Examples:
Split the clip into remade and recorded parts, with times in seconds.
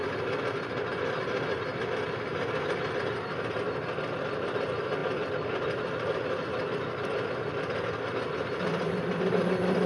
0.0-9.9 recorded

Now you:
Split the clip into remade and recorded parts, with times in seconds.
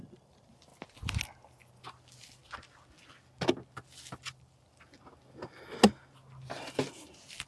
0.0-0.7 remade; 0.7-1.7 recorded; 1.7-2.4 remade; 2.4-6.6 recorded; 6.6-7.5 remade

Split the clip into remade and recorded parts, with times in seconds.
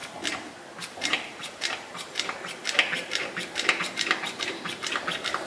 0.0-0.5 remade; 0.5-1.1 recorded; 1.1-4.4 remade; 4.4-5.5 recorded